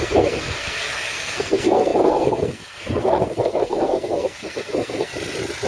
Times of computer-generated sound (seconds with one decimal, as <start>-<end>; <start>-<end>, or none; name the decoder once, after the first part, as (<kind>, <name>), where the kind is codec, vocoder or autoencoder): 0.0-5.1 (codec, SNAC)